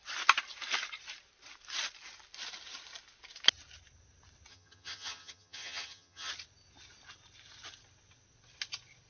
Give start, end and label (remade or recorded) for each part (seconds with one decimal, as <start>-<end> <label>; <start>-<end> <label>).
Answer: 0.0-4.5 recorded; 4.5-6.3 remade; 6.3-9.1 recorded